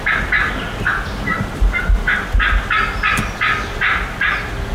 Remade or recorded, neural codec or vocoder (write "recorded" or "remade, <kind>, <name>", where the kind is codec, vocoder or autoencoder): recorded